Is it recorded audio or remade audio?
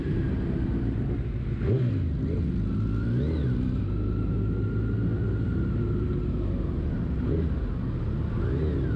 recorded